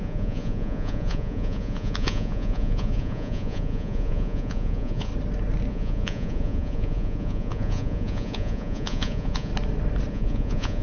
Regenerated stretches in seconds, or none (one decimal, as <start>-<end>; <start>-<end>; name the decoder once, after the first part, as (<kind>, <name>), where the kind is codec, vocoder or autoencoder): 0.0-5.1 (vocoder, Vocos); 5.7-9.5; 10.1-10.8